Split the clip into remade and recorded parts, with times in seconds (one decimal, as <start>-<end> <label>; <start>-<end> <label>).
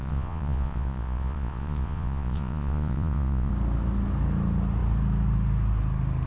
0.0-3.5 remade; 3.5-6.3 recorded